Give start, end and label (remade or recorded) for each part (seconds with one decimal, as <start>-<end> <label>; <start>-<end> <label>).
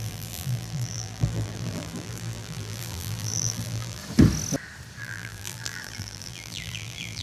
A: 0.0-4.0 remade; 4.0-5.0 recorded; 5.0-7.2 remade